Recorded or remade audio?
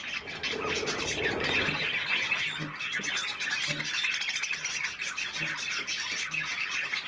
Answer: recorded